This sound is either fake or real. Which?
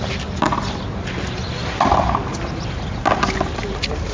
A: real